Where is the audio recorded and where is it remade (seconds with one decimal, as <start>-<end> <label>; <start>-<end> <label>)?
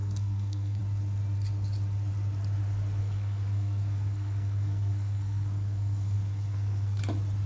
0.0-0.8 remade; 0.8-3.0 recorded; 3.0-7.0 remade; 7.0-7.5 recorded